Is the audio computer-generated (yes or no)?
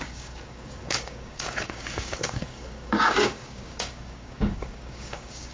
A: yes